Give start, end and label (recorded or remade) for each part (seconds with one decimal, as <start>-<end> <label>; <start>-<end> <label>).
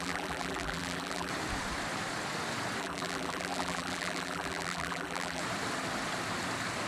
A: 0.0-1.3 remade; 1.3-2.8 recorded; 2.8-5.4 remade; 5.4-6.9 recorded